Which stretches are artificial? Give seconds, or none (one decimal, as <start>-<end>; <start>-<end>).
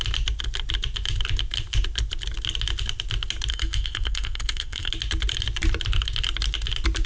3.5-4.9